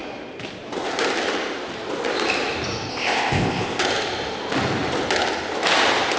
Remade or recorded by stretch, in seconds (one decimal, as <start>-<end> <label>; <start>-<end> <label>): 0.0-2.9 recorded; 2.9-3.8 remade; 3.8-6.2 recorded